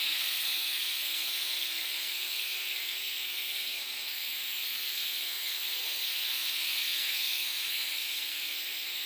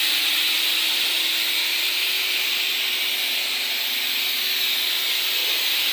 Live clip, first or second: second